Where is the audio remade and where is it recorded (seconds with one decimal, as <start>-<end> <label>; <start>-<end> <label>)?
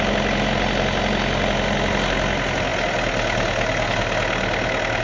0.0-5.0 recorded